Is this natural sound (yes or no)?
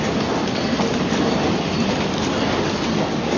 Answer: yes